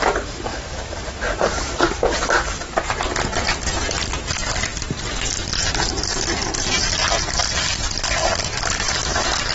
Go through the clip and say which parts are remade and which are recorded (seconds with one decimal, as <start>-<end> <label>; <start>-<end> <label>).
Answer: 0.0-0.5 recorded; 0.5-1.2 remade; 1.2-9.5 recorded